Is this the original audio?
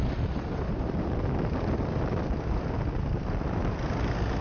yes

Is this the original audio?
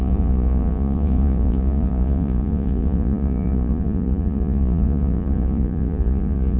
no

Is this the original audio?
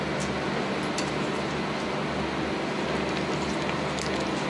yes